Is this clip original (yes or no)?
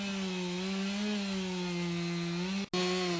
yes